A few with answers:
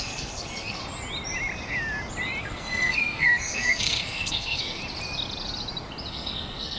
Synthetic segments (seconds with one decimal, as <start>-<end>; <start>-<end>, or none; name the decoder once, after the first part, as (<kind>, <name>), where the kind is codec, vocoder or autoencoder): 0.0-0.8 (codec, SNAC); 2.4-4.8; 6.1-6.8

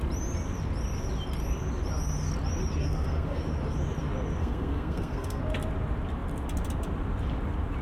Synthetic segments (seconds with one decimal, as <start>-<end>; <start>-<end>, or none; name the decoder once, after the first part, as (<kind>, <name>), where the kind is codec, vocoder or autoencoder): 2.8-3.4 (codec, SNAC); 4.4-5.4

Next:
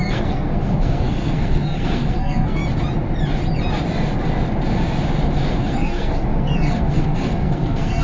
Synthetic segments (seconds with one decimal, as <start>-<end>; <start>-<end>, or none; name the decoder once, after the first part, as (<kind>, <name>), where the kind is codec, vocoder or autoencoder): 0.0-2.6 (codec, SNAC); 5.5-8.0

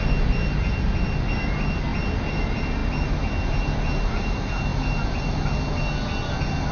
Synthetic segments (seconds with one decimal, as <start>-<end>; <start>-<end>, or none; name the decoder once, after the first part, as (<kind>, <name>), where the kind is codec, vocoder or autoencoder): none